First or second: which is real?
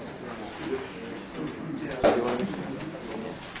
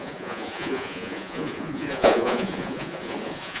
first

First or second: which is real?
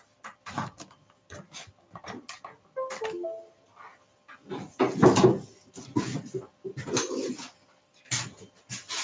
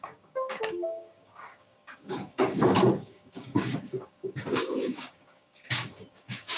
first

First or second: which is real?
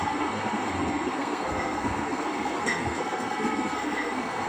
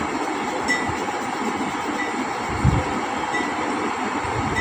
second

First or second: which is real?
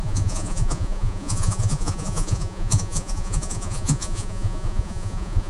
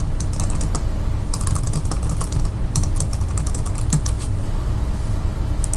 second